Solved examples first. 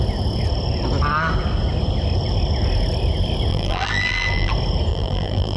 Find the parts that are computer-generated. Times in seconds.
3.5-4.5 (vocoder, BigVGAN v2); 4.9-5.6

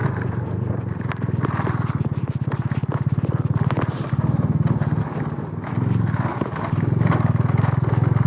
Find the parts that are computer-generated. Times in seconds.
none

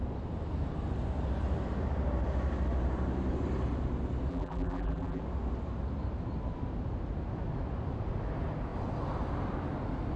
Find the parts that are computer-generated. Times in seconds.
4.3-5.2 (vocoder, BigVGAN v2)

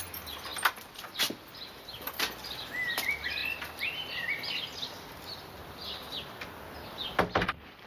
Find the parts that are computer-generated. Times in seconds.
none

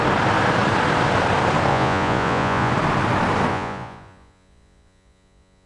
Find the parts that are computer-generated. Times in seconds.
1.7-2.7 (vocoder, Vocos); 3.5-5.7